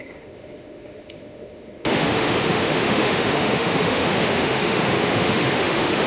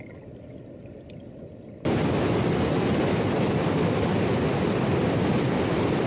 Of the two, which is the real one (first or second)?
second